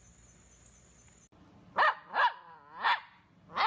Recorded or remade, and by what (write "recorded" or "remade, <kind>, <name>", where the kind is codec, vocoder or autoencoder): recorded